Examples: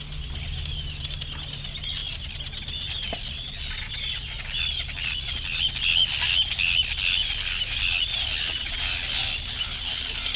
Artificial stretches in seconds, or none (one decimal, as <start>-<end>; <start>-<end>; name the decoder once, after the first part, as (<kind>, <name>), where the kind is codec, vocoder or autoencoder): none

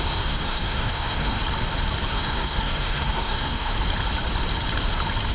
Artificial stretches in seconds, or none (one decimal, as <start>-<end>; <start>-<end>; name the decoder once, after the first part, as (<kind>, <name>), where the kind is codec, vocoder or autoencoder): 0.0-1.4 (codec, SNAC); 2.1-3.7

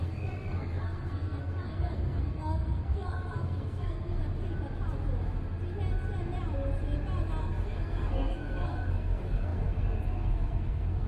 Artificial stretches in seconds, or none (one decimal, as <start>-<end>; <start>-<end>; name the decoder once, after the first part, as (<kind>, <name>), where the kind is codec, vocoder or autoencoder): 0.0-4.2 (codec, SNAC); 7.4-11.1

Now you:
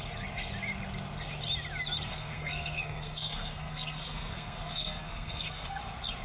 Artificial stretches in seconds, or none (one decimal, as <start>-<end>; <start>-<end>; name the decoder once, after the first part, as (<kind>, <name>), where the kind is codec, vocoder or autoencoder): 2.1-5.8 (codec, SNAC)

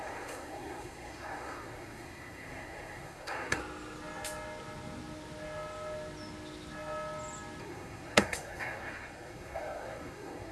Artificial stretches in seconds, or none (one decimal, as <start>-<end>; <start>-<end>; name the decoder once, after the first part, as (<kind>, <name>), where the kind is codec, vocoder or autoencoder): 0.0-3.6 (codec, SNAC); 7.6-10.5

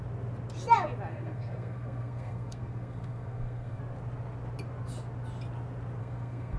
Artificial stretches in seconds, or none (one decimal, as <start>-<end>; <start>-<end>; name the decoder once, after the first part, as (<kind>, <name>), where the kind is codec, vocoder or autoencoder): 1.1-3.8 (codec, SNAC); 6.0-6.6